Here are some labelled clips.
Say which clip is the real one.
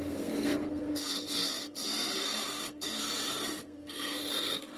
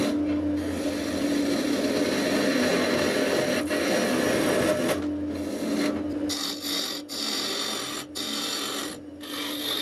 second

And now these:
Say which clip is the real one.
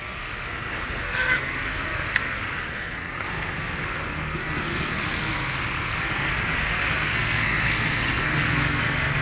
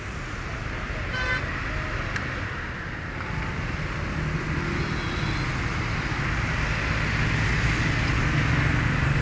second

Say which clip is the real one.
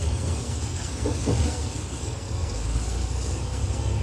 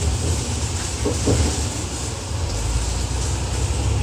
second